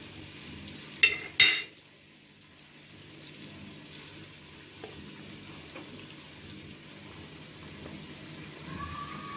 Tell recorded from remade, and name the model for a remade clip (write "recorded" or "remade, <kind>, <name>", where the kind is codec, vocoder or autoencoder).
recorded